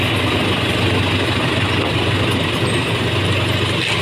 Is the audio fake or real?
real